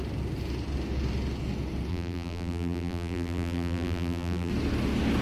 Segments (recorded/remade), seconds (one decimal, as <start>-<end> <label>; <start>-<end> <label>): 0.0-1.9 recorded; 1.9-4.5 remade; 4.5-5.2 recorded